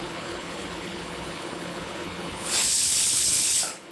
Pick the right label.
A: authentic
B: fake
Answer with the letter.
B